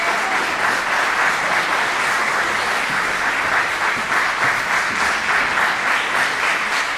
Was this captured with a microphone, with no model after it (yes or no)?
yes